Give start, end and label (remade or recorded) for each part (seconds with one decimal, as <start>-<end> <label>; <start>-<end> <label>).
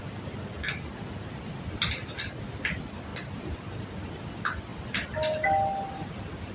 0.0-6.5 recorded